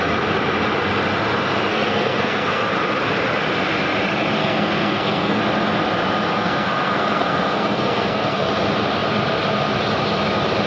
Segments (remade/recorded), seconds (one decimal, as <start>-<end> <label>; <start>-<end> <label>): 0.0-1.7 recorded; 1.7-2.7 remade; 2.7-4.4 recorded; 4.4-5.4 remade; 5.4-6.3 recorded; 6.3-8.5 remade; 8.5-10.7 recorded